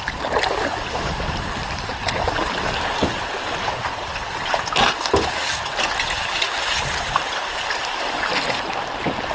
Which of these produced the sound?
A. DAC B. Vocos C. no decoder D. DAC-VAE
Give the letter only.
C